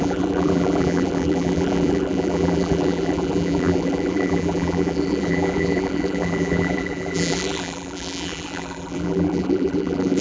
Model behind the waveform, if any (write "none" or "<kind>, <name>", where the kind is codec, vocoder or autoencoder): vocoder, BigVGAN v2